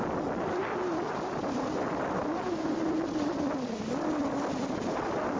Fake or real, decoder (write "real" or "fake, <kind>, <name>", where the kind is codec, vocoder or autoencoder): real